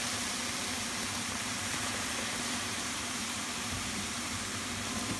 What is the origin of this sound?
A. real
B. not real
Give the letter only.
B